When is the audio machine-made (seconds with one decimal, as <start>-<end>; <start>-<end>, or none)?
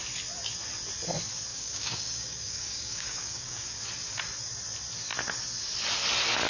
1.5-3.8